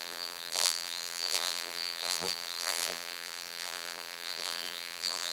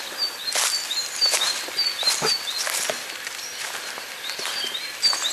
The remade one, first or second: first